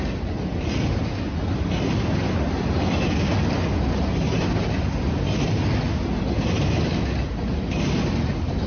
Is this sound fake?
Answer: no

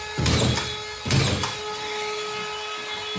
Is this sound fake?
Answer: no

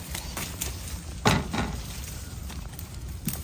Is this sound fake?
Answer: no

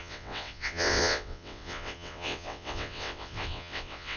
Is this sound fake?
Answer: yes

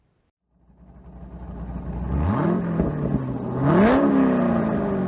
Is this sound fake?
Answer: no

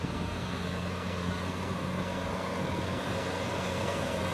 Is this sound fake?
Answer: yes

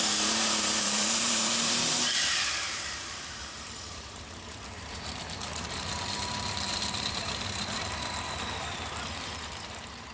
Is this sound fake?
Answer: yes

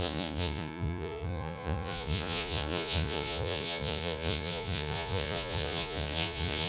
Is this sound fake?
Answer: yes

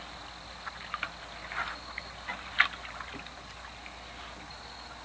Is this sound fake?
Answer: no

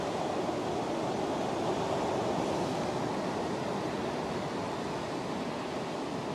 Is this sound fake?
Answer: no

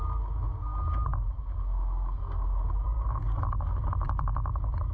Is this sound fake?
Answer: no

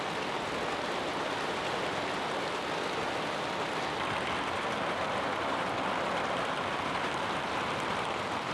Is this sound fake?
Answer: no